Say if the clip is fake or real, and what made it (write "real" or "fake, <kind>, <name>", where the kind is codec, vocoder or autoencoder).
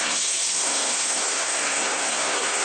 fake, codec, SNAC